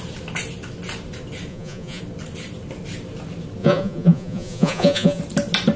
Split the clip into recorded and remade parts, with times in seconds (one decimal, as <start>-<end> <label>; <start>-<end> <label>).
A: 0.0-1.5 recorded; 1.5-2.0 remade; 2.0-3.6 recorded; 3.6-5.2 remade; 5.2-5.8 recorded